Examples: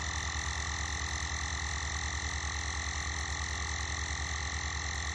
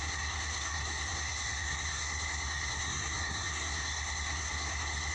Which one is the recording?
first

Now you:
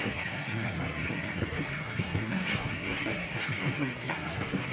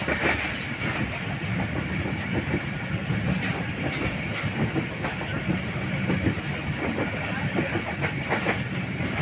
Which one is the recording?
second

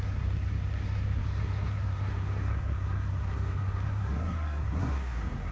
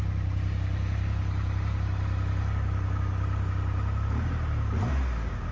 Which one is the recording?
second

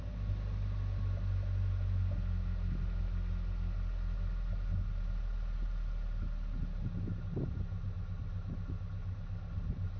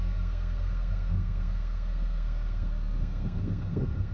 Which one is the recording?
first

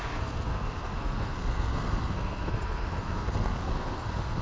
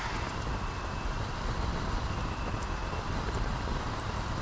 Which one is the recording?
second